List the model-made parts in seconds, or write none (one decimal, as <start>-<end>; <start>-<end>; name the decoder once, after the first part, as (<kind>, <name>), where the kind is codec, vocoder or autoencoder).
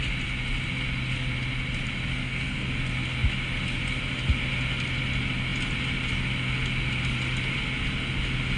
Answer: 2.1-2.7 (codec, SNAC)